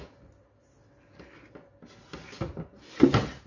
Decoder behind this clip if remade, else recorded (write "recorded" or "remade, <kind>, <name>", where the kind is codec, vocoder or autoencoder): recorded